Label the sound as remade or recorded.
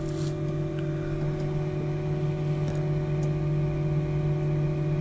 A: recorded